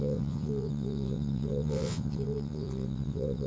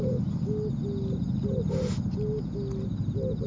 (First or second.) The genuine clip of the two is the second